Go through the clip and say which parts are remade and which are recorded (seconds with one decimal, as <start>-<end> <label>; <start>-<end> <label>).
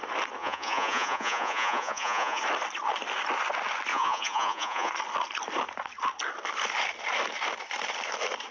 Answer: 0.0-0.4 recorded; 0.4-2.4 remade; 2.4-3.9 recorded; 3.9-4.9 remade; 4.9-8.5 recorded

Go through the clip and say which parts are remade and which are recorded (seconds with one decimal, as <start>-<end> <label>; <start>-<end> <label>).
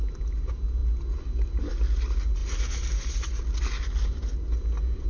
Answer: 0.0-5.1 recorded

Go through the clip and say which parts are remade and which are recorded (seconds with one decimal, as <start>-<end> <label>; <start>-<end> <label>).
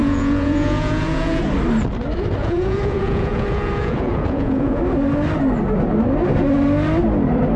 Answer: 0.0-1.4 remade; 1.4-2.4 recorded; 2.4-4.8 remade; 4.8-7.6 recorded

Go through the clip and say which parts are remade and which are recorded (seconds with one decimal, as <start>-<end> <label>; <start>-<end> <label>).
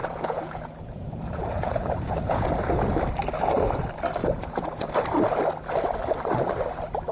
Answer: 0.0-2.5 remade; 2.5-4.2 recorded; 4.2-4.9 remade; 4.9-7.1 recorded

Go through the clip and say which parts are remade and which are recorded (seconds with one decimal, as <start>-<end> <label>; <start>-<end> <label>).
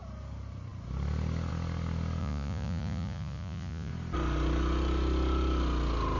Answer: 0.0-2.2 recorded; 2.2-3.9 remade; 3.9-6.2 recorded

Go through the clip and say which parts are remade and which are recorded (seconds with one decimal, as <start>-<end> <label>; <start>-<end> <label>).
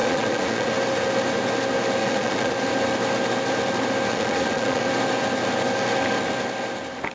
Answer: 0.0-0.7 remade; 0.7-2.0 recorded; 2.0-2.5 remade; 2.5-4.1 recorded; 4.1-4.8 remade; 4.8-7.1 recorded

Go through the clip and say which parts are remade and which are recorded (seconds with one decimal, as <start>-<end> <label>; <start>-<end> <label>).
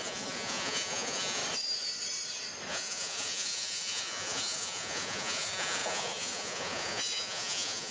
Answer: 0.0-1.4 remade; 1.4-2.7 recorded; 2.7-7.9 remade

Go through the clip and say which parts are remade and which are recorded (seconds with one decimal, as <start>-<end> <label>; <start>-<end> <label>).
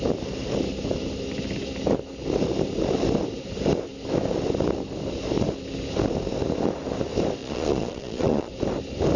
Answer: 0.0-7.4 recorded; 7.4-8.5 remade; 8.5-9.2 recorded